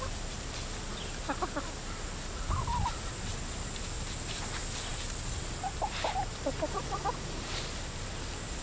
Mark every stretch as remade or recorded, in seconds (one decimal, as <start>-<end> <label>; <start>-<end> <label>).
0.0-8.6 recorded